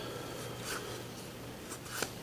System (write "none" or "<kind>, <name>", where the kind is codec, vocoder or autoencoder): none